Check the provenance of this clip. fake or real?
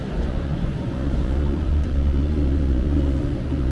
fake